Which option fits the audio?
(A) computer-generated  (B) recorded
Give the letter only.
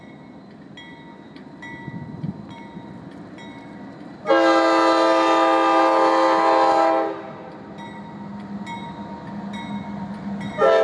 B